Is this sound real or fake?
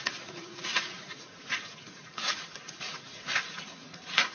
fake